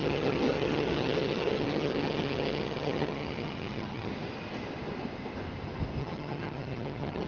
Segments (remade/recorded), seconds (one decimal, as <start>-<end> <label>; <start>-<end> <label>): 0.0-4.1 remade; 4.1-6.0 recorded; 6.0-7.3 remade